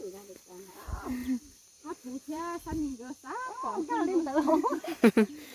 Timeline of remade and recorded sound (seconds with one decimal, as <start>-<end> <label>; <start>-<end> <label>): 0.0-5.5 remade